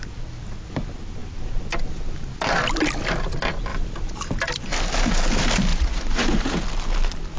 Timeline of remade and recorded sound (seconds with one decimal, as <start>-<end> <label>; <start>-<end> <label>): 0.0-5.7 recorded; 5.7-6.6 remade; 6.6-7.4 recorded

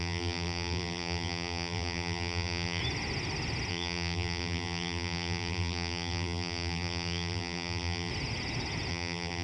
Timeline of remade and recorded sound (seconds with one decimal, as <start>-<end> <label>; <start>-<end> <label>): 0.0-2.8 remade; 2.8-3.7 recorded; 3.7-8.1 remade; 8.1-8.9 recorded; 8.9-9.4 remade